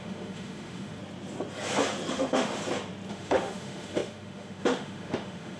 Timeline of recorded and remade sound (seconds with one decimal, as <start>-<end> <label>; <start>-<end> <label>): 0.0-1.0 remade; 1.0-2.1 recorded; 2.1-2.6 remade; 2.6-3.1 recorded; 3.1-5.6 remade